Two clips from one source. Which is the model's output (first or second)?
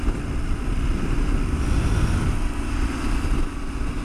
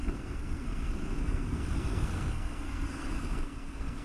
second